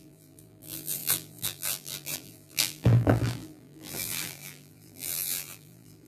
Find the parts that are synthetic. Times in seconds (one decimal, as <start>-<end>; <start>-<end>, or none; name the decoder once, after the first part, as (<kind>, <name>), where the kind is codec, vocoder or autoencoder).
0.0-6.1 (vocoder, BigVGAN v2)